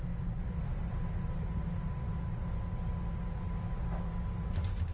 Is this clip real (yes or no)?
yes